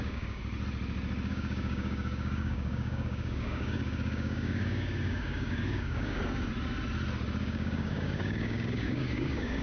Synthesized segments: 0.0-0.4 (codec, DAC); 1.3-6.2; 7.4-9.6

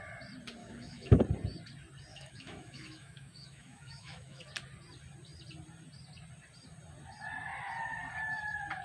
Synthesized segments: 0.6-1.2 (autoencoder, DAC-VAE); 2.1-4.4